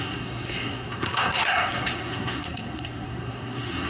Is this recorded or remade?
remade